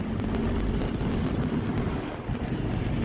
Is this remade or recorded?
recorded